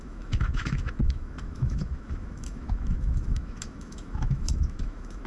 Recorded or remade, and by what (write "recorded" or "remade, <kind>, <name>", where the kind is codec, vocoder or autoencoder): remade, autoencoder, DAC-VAE